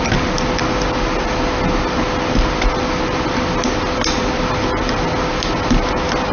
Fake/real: real